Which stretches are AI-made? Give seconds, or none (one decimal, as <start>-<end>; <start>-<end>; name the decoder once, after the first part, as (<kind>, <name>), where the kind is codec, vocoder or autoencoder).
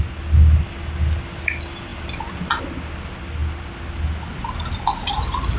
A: none